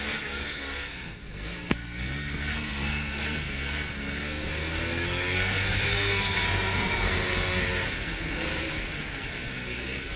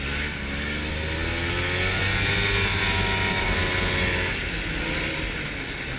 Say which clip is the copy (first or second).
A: first